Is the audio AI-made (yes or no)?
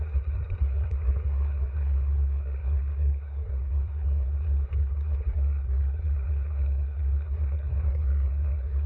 yes